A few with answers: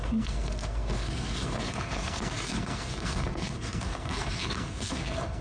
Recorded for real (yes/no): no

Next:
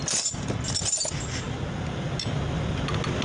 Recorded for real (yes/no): yes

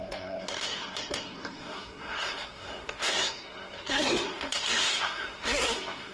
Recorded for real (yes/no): no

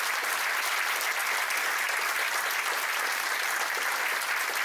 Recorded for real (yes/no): yes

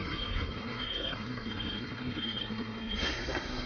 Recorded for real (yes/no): no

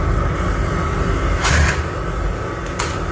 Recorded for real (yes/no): yes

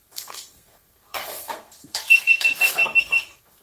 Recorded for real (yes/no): no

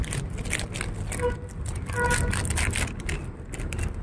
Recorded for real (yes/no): yes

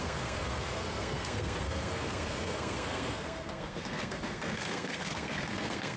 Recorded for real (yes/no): no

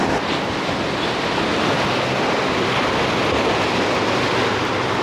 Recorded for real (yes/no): yes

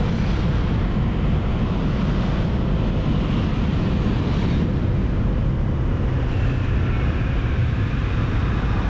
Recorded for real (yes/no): yes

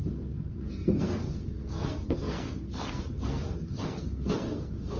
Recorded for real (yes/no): no